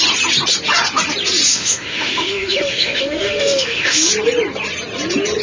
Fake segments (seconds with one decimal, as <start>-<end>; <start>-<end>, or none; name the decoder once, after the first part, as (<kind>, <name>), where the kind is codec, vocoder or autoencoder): 1.5-4.1 (autoencoder, DAC-VAE)